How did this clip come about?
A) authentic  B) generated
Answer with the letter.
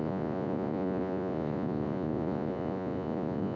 B